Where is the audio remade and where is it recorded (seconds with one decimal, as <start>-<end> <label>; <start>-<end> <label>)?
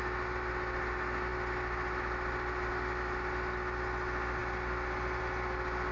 0.0-5.9 recorded